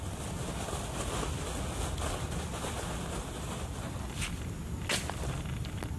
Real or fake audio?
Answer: real